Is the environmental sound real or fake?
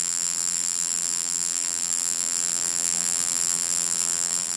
fake